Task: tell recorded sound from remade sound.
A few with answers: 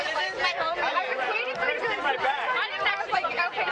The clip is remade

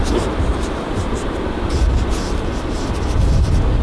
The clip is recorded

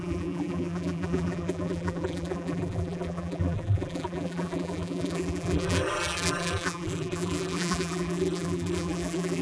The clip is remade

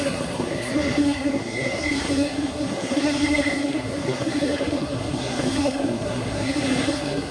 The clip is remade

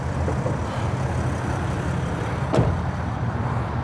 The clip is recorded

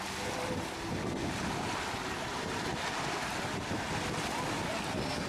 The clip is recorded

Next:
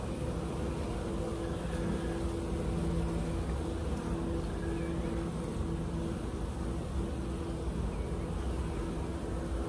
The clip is recorded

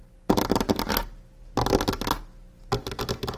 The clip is recorded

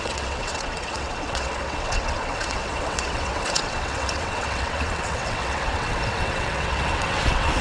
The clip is remade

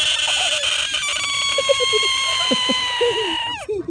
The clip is recorded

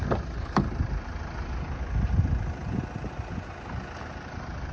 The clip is recorded